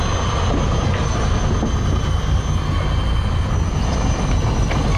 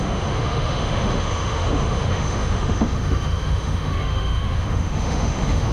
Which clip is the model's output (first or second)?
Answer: second